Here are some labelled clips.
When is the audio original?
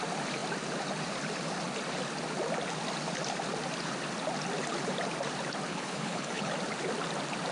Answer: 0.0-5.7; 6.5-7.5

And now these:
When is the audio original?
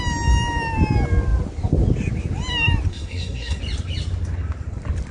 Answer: 0.0-2.9; 3.6-5.1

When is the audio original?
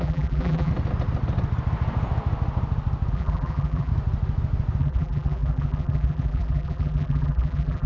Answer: 0.7-3.1; 3.9-4.8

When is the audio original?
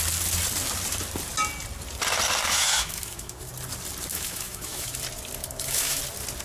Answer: 0.0-2.4; 3.5-4.1; 5.0-5.4; 6.0-6.4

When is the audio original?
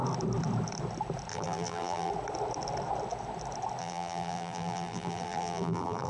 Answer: 0.0-1.3; 2.1-3.8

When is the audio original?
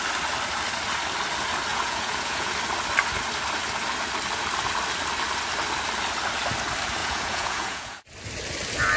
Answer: 0.0-1.7; 2.5-7.0; 8.0-9.0